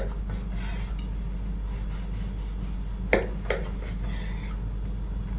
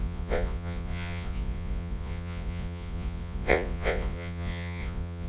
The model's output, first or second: second